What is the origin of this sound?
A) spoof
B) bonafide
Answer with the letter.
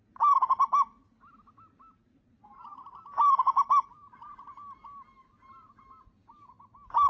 B